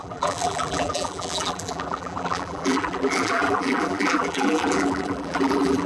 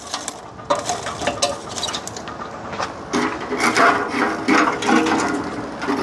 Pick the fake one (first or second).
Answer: first